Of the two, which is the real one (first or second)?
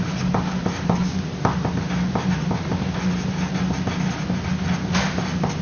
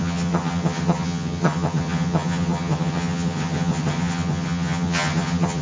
first